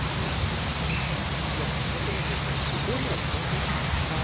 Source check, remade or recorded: recorded